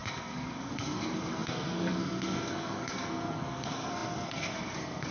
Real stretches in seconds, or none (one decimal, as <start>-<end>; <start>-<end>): none